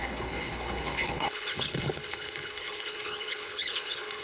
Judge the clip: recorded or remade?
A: remade